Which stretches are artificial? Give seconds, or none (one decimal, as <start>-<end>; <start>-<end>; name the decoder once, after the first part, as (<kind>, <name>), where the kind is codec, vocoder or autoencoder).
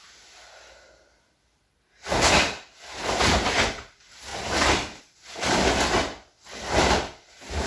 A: none